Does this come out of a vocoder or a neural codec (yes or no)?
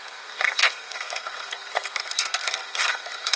yes